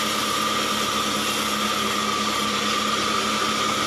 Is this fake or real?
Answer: real